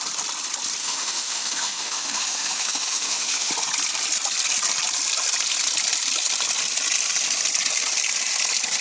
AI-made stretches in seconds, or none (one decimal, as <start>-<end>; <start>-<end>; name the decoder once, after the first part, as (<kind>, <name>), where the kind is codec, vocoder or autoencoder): 0.8-3.5 (autoencoder, DAC-VAE)